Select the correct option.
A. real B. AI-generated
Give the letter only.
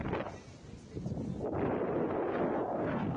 A